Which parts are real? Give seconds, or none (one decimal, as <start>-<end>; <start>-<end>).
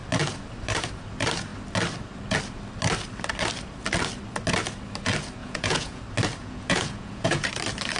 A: 0.0-5.4; 6.0-6.4; 7.5-8.0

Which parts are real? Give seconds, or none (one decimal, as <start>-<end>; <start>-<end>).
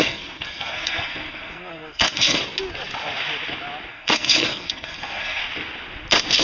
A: 2.4-3.9; 5.4-6.4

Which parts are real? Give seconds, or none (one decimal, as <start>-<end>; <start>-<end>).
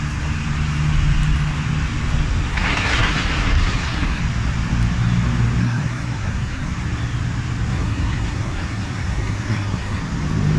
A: 0.0-2.5; 4.2-5.6; 6.7-7.7; 10.0-10.6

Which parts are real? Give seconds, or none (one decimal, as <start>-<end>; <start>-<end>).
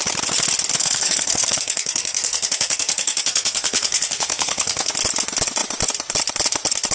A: 0.0-0.8; 4.9-6.9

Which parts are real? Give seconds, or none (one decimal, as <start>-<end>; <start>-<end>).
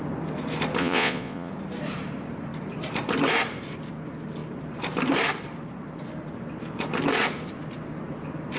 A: 0.0-0.8; 1.5-8.6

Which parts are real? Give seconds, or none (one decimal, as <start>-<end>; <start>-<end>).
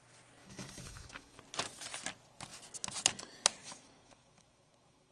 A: 0.0-0.4; 1.4-3.6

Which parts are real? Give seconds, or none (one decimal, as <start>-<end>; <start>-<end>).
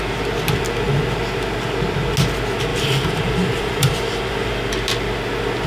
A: 0.0-2.7; 4.5-5.7